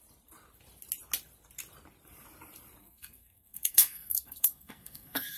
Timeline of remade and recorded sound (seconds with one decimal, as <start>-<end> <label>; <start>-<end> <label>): 0.0-2.8 recorded; 2.8-5.4 remade